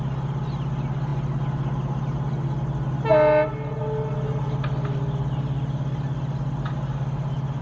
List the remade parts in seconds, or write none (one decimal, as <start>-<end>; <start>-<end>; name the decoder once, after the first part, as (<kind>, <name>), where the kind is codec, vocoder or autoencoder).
none